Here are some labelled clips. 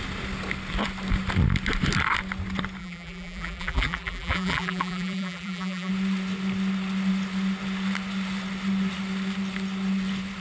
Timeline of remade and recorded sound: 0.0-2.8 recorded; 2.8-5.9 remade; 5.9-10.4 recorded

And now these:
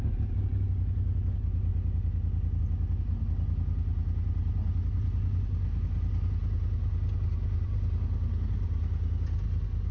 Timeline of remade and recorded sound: 0.0-9.9 recorded

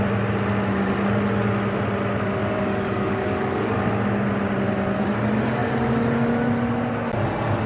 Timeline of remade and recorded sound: 0.0-2.4 recorded; 2.4-3.8 remade; 3.8-7.7 recorded

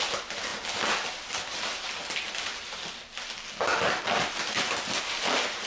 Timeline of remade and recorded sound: 0.0-5.7 recorded

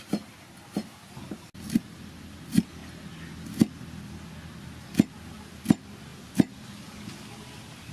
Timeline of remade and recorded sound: 0.0-7.9 recorded

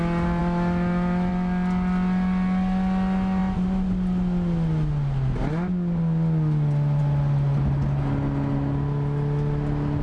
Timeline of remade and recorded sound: 0.0-10.0 recorded

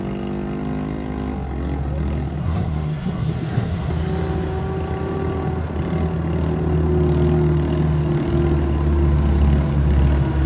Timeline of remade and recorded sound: 0.0-2.4 recorded; 2.4-3.9 remade; 3.9-10.5 recorded

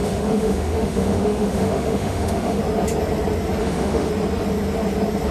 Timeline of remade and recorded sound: 0.0-2.6 remade; 2.6-3.6 recorded; 3.6-4.1 remade; 4.1-5.3 recorded